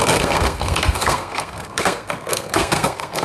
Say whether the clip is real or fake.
fake